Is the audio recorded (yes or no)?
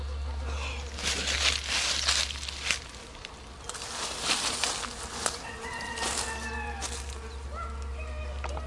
yes